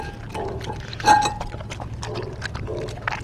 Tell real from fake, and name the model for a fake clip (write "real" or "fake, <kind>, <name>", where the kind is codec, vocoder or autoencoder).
real